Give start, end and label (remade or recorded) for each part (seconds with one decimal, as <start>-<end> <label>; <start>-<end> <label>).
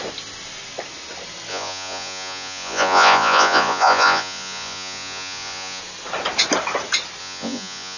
0.0-1.5 recorded; 1.5-5.8 remade; 5.8-7.2 recorded; 7.2-8.0 remade